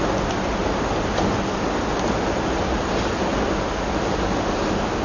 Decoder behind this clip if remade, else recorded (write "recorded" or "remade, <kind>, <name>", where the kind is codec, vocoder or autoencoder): recorded